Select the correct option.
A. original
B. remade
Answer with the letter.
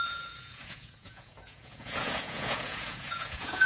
B